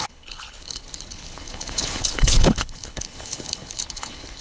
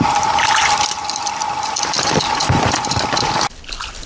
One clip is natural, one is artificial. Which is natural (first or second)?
second